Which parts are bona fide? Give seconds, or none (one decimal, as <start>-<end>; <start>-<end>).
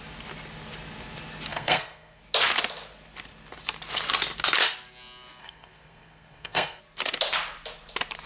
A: 0.0-1.5; 2.2-5.4; 6.8-8.3